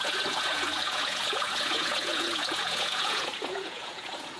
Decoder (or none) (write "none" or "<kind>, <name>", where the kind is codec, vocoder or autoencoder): vocoder, Vocos